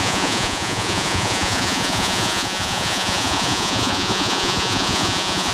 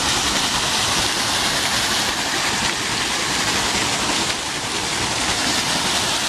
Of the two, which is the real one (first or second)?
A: second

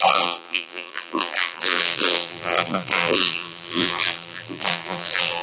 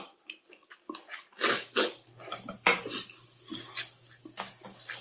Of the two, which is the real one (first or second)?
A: second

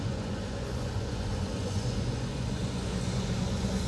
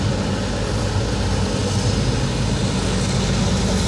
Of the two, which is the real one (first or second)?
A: second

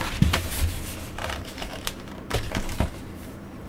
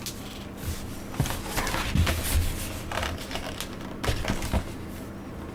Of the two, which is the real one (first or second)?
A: second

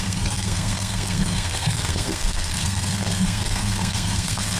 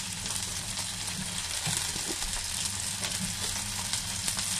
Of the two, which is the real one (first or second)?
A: second